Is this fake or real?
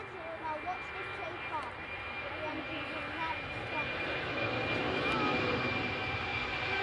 real